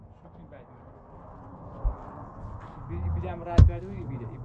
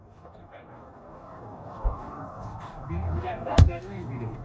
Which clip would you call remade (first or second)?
second